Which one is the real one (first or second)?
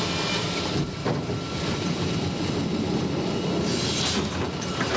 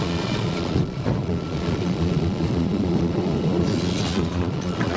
first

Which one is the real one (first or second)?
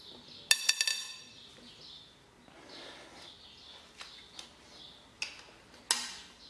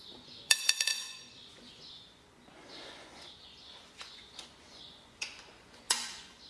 first